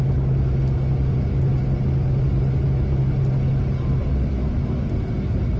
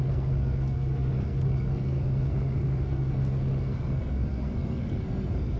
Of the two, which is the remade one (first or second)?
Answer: second